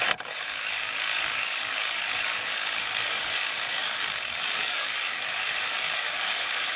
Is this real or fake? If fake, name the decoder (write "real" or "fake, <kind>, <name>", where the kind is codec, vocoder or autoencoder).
fake, codec, DAC